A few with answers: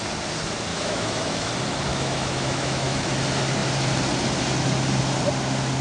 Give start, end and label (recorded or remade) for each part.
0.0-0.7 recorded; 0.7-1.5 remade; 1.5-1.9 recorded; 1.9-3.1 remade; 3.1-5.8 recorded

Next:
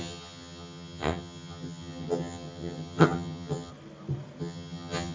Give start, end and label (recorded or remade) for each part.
0.0-3.7 remade; 3.7-4.4 recorded; 4.4-5.1 remade

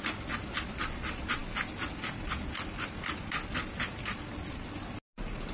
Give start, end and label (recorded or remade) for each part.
0.0-5.5 recorded

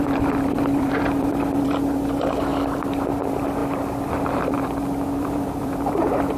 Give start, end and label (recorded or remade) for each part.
0.0-2.5 remade; 2.5-3.1 recorded; 3.1-6.4 remade

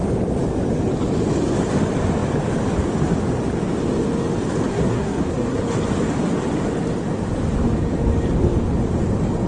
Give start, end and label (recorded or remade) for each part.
0.0-4.7 recorded; 4.7-5.6 remade; 5.6-9.5 recorded

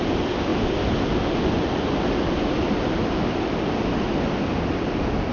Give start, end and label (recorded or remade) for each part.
0.0-5.3 recorded

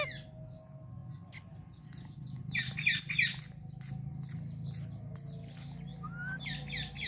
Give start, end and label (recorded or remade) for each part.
0.0-7.1 recorded